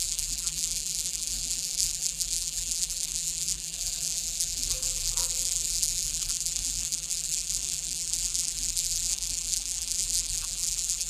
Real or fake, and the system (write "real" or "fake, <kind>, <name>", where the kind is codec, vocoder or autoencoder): fake, vocoder, BigVGAN v2